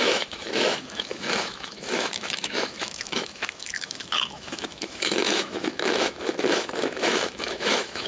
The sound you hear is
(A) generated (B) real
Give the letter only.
A